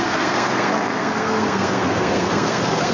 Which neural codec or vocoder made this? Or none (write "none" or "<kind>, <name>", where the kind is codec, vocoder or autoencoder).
codec, SNAC